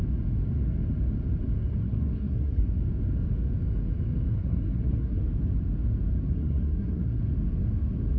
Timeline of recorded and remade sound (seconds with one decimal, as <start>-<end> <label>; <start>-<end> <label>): 0.0-1.8 recorded; 1.8-2.8 remade; 2.8-4.3 recorded; 4.3-5.2 remade; 5.2-6.3 recorded; 6.3-7.2 remade; 7.2-8.2 recorded